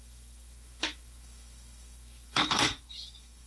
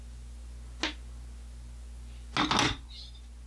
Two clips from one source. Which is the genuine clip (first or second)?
second